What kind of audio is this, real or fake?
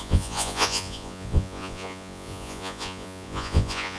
fake